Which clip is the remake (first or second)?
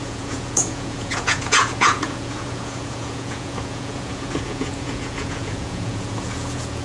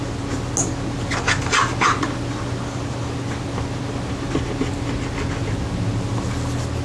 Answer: first